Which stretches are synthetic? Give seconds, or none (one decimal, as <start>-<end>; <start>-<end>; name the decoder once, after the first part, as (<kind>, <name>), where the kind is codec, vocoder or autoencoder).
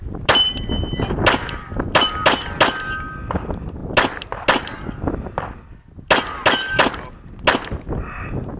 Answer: none